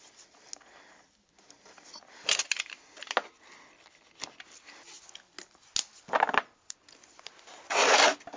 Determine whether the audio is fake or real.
real